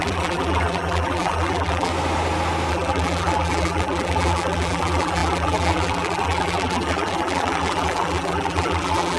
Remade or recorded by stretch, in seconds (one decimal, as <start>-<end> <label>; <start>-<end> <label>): 0.0-1.9 remade; 1.9-2.7 recorded; 2.7-9.2 remade